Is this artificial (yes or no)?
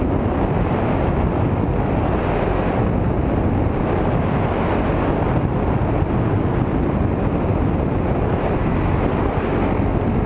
no